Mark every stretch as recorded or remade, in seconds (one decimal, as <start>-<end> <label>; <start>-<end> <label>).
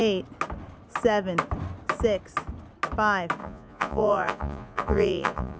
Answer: 0.0-3.4 recorded; 3.4-5.6 remade